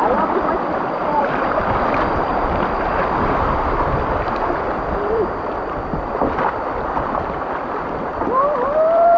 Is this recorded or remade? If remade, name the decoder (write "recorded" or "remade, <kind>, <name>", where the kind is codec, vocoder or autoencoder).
remade, vocoder, BigVGAN v2